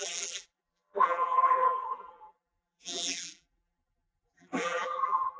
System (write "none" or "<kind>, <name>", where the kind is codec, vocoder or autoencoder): vocoder, BigVGAN v2